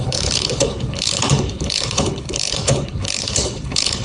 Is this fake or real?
fake